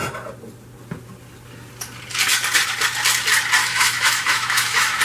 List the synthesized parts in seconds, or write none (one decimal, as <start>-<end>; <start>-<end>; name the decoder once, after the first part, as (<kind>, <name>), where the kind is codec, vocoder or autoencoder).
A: 3.6-5.0 (autoencoder, DAC-VAE)